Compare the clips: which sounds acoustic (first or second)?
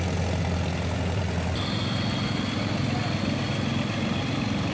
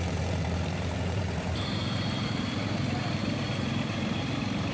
first